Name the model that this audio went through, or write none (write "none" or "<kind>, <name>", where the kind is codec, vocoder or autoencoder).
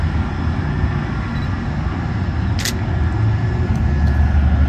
none